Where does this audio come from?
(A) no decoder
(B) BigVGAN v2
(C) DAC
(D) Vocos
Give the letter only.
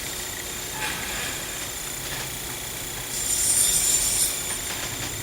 A